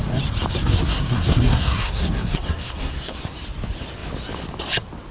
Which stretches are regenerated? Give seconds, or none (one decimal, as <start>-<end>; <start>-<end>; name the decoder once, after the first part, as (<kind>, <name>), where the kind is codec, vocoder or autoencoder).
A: 0.7-3.2 (codec, SNAC)